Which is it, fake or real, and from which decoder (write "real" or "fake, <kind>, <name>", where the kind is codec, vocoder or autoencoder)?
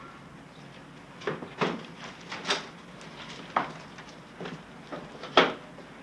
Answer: real